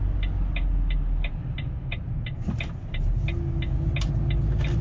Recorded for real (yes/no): yes